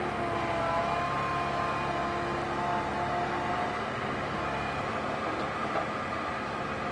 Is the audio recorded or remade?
recorded